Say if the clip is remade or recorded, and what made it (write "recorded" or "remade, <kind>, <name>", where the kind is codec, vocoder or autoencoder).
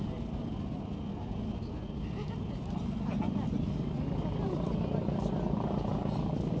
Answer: recorded